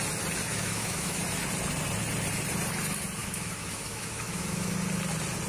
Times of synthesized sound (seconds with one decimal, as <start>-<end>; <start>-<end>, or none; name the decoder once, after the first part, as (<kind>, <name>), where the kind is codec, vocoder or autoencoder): 0.5-1.2 (autoencoder, DAC-VAE); 3.2-4.7

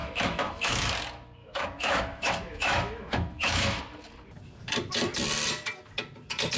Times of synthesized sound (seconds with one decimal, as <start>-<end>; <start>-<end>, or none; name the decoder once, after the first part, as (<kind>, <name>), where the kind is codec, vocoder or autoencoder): 0.0-0.9 (autoencoder, DAC-VAE); 1.4-3.8

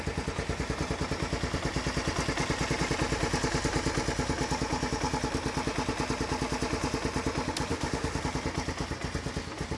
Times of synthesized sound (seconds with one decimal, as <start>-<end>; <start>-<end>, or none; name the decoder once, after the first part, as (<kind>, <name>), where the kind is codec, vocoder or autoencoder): 7.7-8.2 (autoencoder, DAC-VAE)

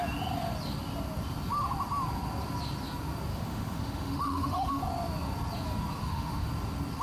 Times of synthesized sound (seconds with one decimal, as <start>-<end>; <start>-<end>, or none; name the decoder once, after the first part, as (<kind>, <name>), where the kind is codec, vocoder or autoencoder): 3.3-4.8 (autoencoder, DAC-VAE); 6.0-6.5